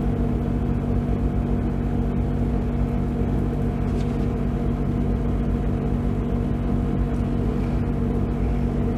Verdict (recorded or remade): recorded